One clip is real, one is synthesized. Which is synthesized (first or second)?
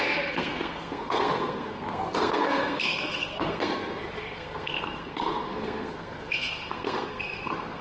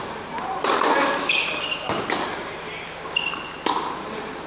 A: first